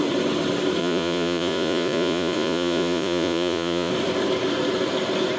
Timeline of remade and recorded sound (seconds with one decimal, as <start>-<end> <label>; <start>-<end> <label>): 0.0-0.8 recorded; 0.8-3.9 remade; 3.9-5.4 recorded